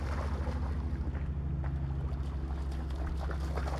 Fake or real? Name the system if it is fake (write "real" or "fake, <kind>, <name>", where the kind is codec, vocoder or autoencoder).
real